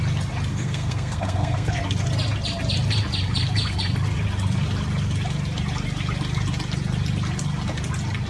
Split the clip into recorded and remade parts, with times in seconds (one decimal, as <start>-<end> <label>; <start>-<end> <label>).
0.0-0.5 recorded; 0.5-1.8 remade; 1.8-8.3 recorded